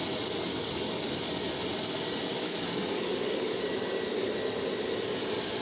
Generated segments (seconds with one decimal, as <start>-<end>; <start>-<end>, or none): 0.5-1.3; 2.3-3.6